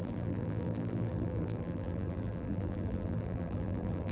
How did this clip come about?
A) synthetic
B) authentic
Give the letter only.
A